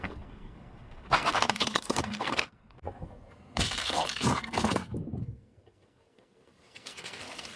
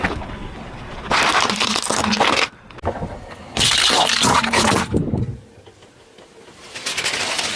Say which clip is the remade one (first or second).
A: first